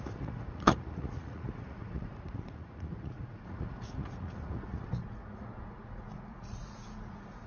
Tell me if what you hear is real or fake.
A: fake